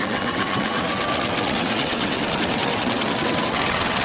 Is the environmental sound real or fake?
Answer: fake